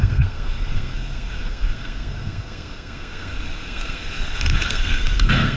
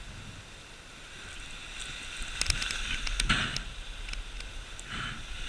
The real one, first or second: second